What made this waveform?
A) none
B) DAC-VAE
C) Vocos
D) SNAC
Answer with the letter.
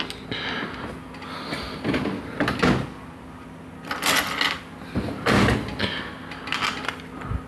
A